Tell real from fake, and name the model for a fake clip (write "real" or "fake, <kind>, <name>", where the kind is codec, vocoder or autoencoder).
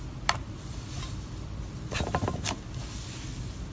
real